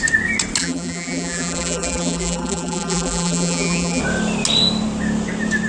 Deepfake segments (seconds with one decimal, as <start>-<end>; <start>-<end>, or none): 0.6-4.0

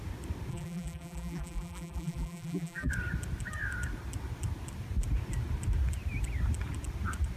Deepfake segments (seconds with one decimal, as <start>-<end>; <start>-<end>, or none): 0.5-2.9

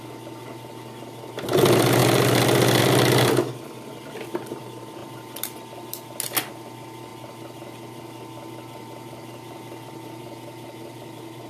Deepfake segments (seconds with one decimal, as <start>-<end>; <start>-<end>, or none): none

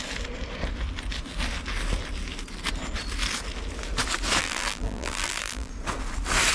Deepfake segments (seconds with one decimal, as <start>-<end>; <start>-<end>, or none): 4.4-5.7